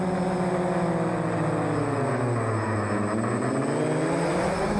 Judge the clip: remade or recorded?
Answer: recorded